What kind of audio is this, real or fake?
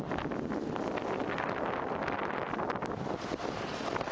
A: real